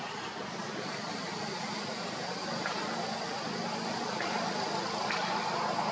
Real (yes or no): no